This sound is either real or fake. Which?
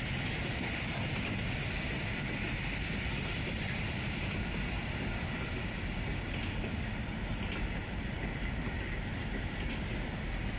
real